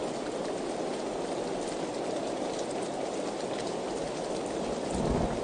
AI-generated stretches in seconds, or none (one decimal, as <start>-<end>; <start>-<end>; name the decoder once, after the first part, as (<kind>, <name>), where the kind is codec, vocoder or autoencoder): none